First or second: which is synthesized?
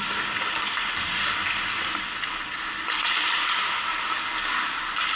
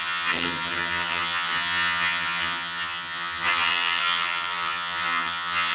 second